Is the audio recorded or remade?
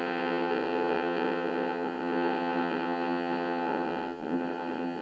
remade